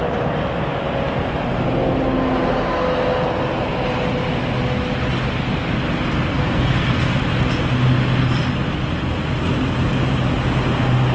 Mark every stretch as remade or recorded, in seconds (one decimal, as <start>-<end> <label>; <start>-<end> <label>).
0.0-6.3 recorded; 6.3-7.2 remade; 7.2-11.1 recorded